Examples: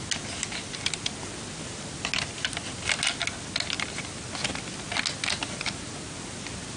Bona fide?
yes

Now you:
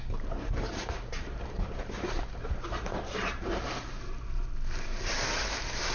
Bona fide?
no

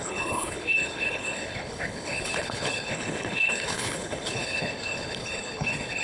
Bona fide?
no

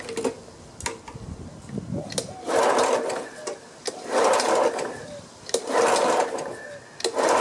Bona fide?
yes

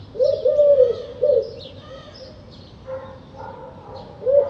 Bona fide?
yes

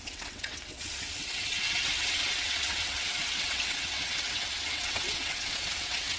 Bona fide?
no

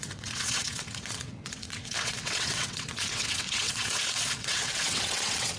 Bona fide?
no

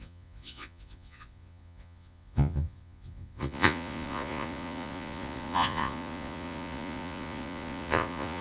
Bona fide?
no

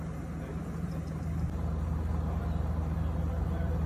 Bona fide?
yes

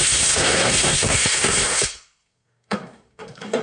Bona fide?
no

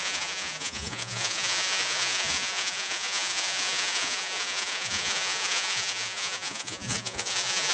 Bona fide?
no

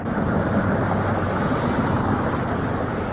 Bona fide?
yes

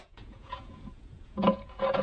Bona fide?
no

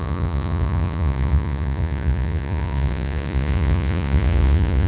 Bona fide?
no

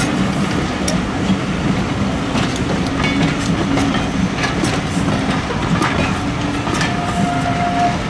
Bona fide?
yes